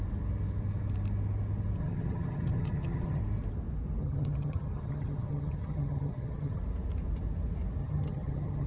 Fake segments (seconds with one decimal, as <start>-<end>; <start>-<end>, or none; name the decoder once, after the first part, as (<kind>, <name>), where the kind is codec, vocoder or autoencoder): 1.8-3.2 (vocoder, HiFi-GAN); 4.0-6.6; 7.8-8.7